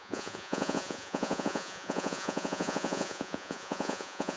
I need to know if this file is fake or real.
fake